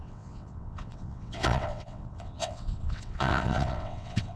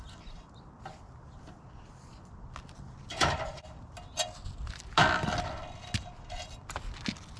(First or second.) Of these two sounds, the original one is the second